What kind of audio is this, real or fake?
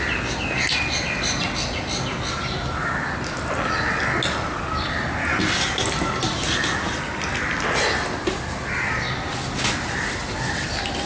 real